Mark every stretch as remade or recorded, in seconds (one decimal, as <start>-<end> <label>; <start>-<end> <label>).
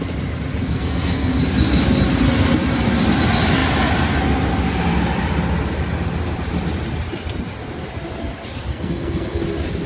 0.0-0.6 recorded; 0.6-1.4 remade; 1.4-8.7 recorded; 8.7-9.4 remade; 9.4-9.9 recorded